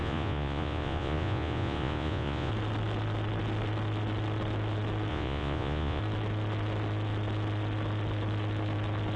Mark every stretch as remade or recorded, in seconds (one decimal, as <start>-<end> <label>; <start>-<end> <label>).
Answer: 0.0-2.5 remade; 2.5-5.1 recorded; 5.1-6.0 remade; 6.0-9.2 recorded